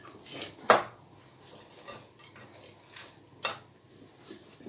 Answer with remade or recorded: recorded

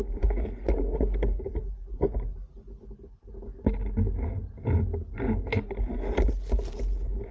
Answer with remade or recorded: recorded